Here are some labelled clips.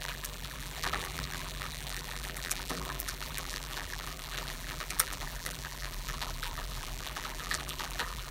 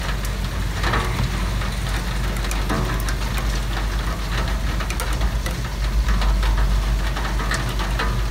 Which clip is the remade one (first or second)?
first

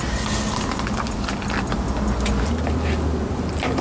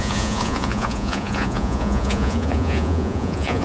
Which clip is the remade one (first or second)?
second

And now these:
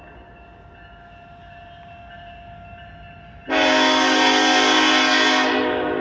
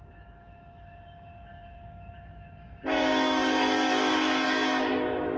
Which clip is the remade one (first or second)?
second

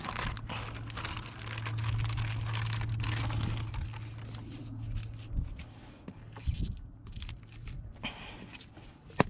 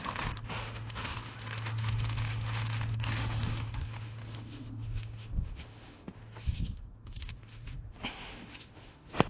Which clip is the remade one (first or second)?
second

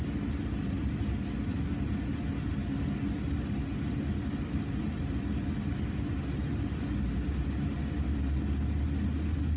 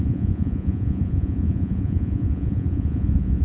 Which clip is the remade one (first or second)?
second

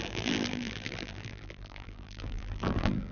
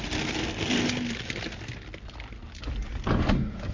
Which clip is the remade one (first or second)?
first